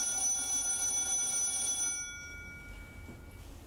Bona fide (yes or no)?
yes